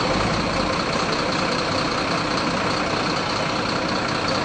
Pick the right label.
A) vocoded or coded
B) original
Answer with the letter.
B